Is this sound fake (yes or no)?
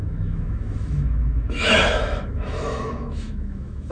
yes